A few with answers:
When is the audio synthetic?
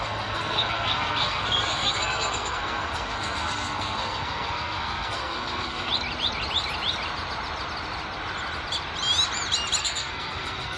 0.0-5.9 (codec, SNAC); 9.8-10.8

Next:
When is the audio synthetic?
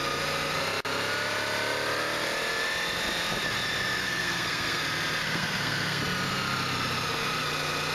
4.0-4.8 (codec, SNAC); 5.2-6.0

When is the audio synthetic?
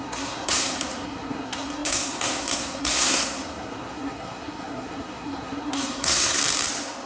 0.0-6.4 (codec, SNAC)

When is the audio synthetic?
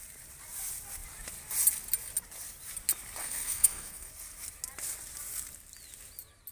3.2-4.1 (codec, SNAC)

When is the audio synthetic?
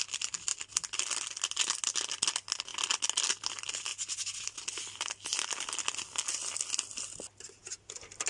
none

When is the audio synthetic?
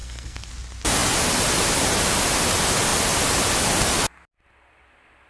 0.0-0.5 (codec, SNAC)